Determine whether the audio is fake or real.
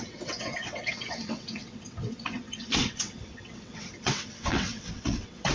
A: fake